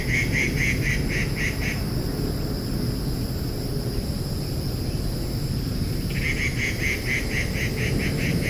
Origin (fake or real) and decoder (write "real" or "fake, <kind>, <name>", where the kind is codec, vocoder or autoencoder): real